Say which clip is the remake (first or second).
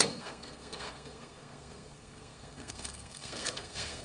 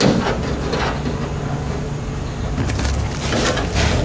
first